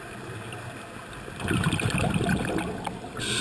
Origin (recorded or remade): recorded